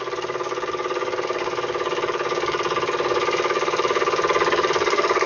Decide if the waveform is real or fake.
fake